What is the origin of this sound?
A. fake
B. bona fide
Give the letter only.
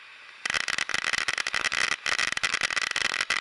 B